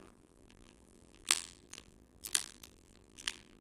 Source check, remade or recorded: remade